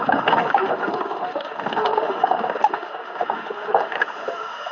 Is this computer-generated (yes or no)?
yes